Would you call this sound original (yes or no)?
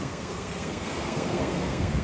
no